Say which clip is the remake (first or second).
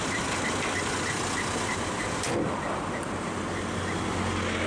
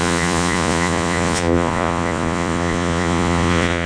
second